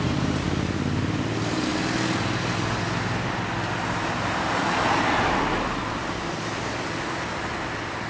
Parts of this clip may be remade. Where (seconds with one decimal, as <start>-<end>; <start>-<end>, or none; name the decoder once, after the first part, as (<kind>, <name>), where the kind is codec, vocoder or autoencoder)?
none